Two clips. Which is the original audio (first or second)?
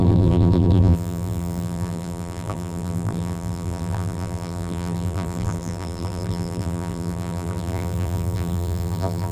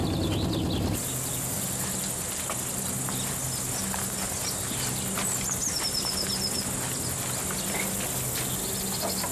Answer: second